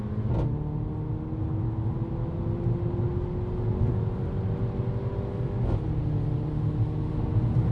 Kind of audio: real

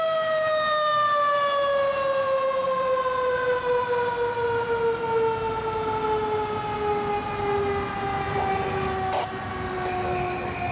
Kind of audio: real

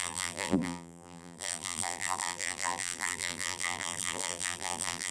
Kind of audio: fake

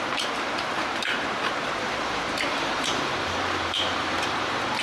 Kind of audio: fake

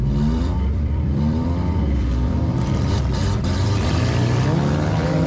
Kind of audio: fake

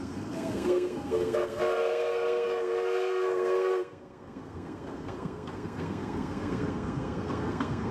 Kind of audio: fake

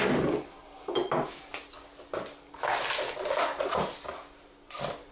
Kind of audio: real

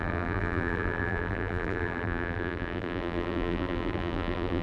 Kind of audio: fake